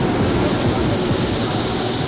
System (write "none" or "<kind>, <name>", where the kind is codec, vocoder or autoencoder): none